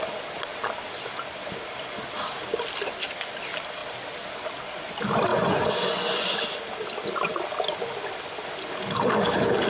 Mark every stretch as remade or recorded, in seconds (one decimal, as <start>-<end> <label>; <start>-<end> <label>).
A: 0.0-5.3 recorded; 5.3-6.4 remade; 6.4-9.7 recorded